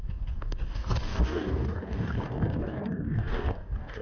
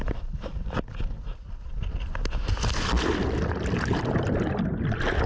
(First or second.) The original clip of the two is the second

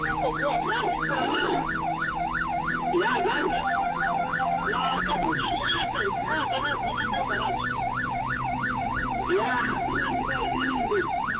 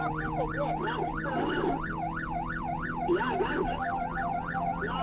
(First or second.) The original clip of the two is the second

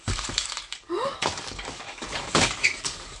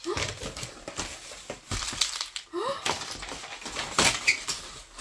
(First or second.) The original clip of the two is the second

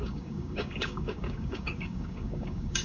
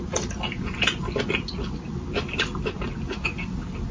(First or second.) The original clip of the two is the second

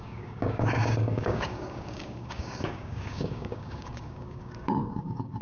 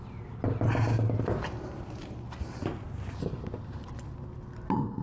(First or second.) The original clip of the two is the second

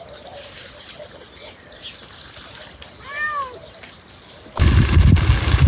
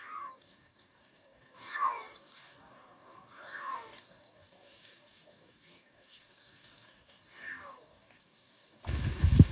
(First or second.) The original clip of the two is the first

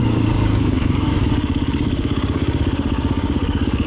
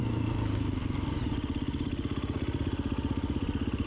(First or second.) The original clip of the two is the second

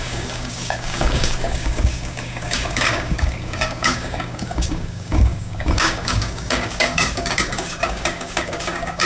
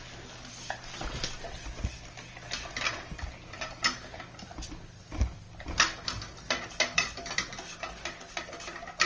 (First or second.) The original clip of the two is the second